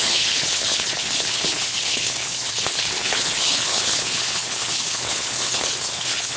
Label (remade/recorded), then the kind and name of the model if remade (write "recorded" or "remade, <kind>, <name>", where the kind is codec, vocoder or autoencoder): remade, codec, HILCodec